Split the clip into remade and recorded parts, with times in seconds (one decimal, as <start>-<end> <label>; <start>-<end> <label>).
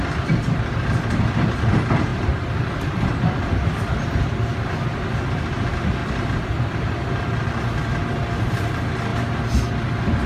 0.0-2.1 recorded; 2.1-5.4 remade; 5.4-6.0 recorded; 6.0-7.6 remade; 7.6-10.3 recorded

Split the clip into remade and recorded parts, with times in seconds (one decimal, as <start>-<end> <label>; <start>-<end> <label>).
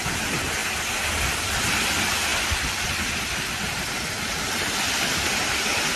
0.0-6.0 recorded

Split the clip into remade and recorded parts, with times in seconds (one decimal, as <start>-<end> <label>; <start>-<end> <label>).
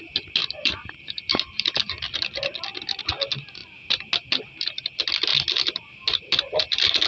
0.0-0.4 recorded; 0.4-3.0 remade; 3.0-7.1 recorded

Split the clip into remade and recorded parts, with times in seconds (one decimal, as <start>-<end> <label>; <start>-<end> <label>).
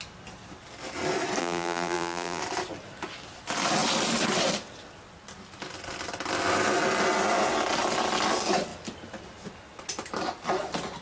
0.0-1.4 recorded; 1.4-2.4 remade; 2.4-11.0 recorded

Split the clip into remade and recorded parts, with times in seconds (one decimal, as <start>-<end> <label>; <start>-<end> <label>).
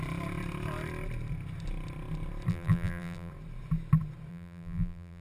0.0-2.5 recorded; 2.5-3.3 remade; 3.3-4.3 recorded; 4.3-5.2 remade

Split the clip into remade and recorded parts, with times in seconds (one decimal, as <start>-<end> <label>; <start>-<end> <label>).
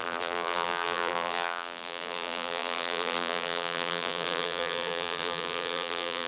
0.0-6.3 remade